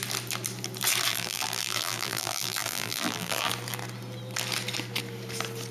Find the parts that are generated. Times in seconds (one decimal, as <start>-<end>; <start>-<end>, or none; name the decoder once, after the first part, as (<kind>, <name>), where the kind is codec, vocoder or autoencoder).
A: 1.1-3.5 (vocoder, BigVGAN v2)